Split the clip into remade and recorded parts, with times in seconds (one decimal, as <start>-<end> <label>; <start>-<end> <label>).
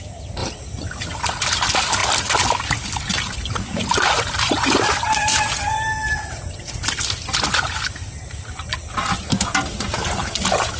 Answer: 0.0-10.8 recorded